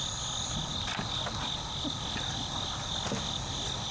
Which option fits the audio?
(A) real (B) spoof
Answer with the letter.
A